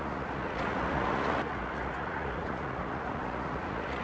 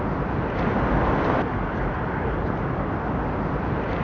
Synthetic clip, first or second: first